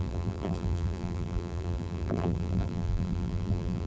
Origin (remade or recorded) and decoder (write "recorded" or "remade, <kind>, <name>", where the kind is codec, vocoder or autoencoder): remade, vocoder, BigVGAN v2